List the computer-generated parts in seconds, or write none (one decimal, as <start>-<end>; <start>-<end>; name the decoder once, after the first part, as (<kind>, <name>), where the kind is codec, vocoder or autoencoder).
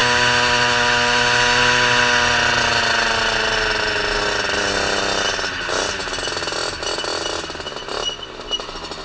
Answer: none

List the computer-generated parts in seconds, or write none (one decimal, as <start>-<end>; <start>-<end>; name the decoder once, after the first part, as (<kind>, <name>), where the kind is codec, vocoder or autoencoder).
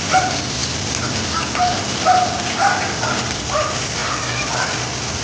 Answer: none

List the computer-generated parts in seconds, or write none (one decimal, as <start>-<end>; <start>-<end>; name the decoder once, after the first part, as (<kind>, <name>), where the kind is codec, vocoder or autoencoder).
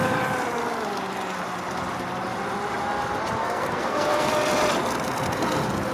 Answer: 3.4-4.3 (codec, SNAC)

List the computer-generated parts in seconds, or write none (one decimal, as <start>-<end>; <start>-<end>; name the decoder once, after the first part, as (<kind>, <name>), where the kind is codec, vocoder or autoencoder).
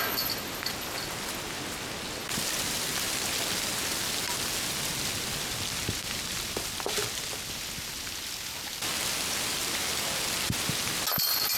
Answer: none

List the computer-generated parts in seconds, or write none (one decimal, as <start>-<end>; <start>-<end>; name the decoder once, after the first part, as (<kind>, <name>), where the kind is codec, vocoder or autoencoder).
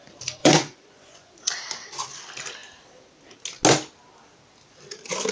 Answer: 0.4-1.3 (vocoder, Vocos)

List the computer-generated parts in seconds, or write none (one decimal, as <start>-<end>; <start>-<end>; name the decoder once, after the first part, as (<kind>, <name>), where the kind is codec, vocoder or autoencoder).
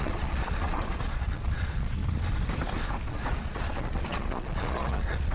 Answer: 0.0-2.0 (vocoder, Vocos); 3.1-5.3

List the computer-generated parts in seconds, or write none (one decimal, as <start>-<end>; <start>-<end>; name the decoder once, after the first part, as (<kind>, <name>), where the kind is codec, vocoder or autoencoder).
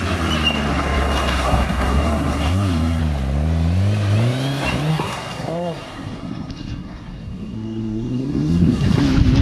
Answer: 0.7-3.0 (codec, SNAC); 4.9-9.0